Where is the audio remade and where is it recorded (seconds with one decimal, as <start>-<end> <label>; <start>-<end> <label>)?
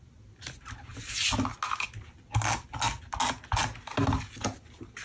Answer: 0.0-5.0 recorded